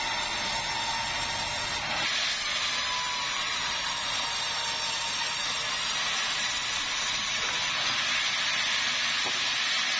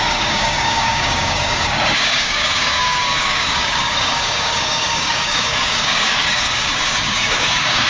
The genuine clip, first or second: first